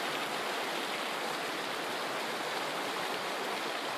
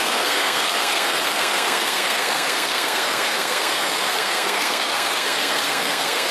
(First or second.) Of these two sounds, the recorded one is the first